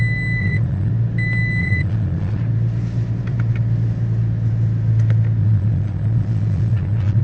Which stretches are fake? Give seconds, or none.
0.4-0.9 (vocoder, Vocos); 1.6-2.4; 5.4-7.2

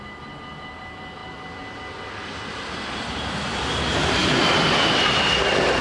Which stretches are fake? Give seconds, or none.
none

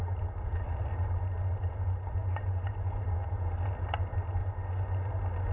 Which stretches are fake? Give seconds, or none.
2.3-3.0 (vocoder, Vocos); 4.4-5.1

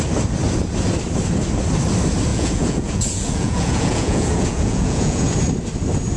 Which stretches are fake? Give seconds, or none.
2.3-5.4 (vocoder, Vocos)